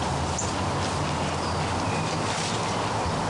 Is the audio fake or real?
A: real